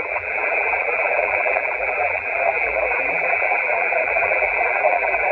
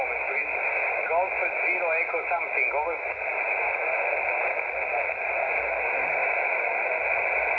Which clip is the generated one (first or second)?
first